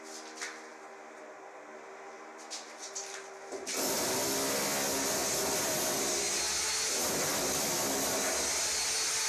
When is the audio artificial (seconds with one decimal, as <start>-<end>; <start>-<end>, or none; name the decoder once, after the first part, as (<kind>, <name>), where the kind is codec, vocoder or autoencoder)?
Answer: none